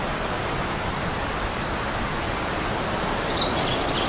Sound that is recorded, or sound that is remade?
remade